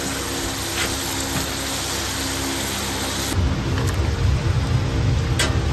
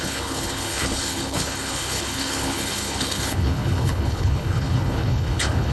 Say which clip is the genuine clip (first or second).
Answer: first